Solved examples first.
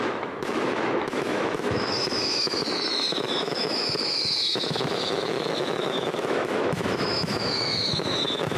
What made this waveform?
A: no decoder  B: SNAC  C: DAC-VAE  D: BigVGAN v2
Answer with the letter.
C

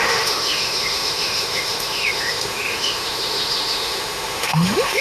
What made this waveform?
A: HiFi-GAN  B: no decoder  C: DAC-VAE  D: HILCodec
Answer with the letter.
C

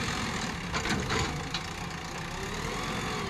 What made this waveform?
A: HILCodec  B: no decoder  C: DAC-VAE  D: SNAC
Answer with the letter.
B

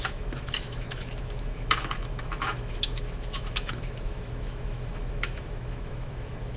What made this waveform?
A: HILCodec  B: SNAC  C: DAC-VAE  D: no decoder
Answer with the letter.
C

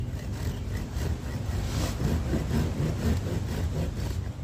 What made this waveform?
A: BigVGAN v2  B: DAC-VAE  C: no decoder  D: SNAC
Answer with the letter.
C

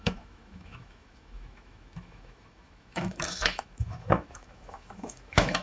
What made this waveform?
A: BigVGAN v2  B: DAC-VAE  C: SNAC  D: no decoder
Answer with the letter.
B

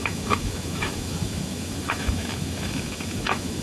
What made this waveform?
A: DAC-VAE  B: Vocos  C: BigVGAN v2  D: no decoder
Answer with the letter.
A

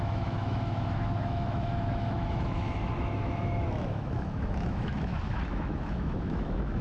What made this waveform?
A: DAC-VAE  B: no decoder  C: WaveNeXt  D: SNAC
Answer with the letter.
A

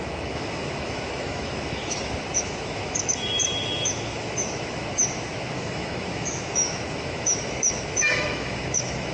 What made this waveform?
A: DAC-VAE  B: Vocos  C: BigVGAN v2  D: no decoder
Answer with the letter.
A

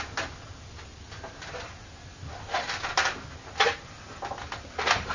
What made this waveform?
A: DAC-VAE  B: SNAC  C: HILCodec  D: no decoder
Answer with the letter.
D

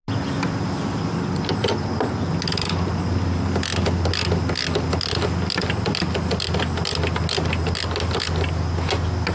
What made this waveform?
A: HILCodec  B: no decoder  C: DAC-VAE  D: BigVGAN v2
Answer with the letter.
B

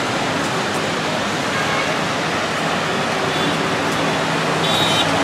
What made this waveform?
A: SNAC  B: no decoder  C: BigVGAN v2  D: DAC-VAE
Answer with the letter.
B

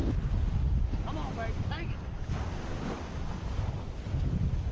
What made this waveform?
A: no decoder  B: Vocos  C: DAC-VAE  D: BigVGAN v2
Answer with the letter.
A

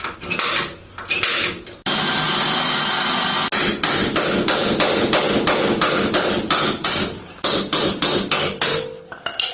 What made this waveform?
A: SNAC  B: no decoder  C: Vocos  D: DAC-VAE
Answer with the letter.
B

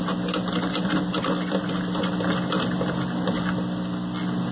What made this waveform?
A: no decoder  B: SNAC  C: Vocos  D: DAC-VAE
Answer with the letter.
A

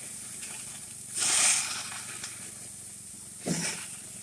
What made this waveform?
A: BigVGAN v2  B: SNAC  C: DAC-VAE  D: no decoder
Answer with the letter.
D